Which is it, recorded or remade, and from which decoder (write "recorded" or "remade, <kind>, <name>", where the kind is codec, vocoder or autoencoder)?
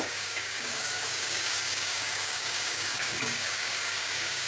remade, codec, DAC